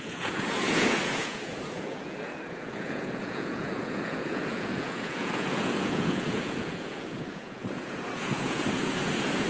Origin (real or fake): fake